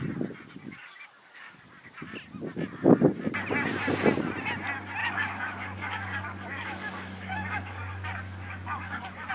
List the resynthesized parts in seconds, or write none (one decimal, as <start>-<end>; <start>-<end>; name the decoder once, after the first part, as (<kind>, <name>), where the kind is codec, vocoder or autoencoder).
0.6-1.9 (codec, DAC); 5.0-9.3